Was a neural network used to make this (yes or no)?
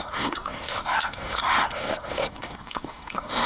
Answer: yes